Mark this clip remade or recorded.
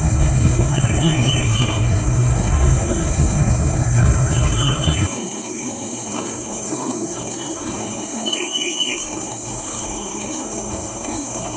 remade